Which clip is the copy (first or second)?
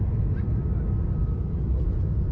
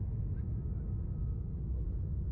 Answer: first